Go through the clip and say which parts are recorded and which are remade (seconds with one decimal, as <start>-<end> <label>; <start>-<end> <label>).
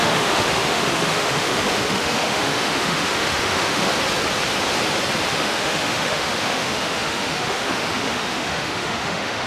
0.0-3.9 remade; 3.9-5.3 recorded; 5.3-9.5 remade